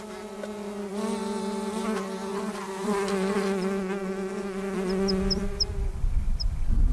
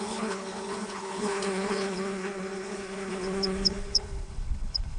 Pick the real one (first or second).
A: first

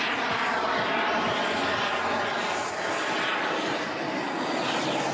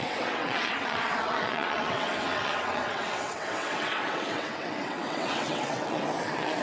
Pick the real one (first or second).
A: first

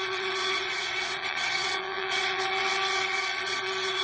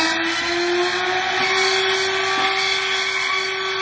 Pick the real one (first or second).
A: second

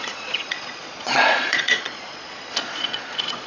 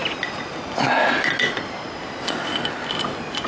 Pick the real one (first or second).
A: second